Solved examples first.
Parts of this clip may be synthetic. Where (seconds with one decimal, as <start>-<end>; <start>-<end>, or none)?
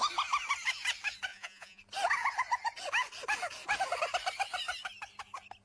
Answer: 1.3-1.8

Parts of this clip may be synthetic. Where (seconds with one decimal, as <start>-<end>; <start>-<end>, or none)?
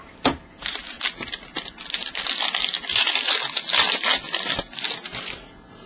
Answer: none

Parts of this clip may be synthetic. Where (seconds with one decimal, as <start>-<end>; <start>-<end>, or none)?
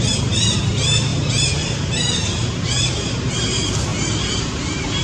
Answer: 0.0-5.0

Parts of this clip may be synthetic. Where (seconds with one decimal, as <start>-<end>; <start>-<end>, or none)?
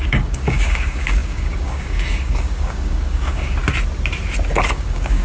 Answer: 0.0-3.6; 4.7-5.2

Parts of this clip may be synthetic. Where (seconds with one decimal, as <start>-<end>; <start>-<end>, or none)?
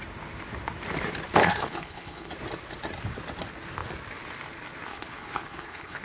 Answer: 1.4-2.3; 4.9-6.0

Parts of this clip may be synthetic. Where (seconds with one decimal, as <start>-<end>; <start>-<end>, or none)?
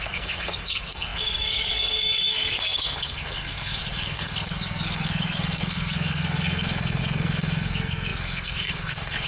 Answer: 0.0-9.3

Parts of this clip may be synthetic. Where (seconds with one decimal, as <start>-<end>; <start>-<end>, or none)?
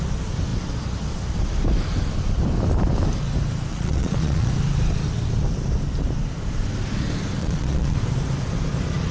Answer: 3.7-4.5; 7.4-8.0